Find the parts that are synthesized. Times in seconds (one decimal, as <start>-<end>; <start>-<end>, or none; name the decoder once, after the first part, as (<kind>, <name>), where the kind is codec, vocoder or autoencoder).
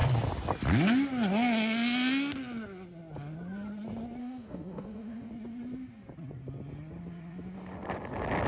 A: 4.2-5.3 (autoencoder, DAC-VAE)